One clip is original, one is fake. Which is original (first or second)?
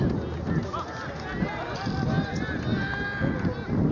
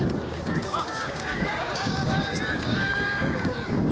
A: first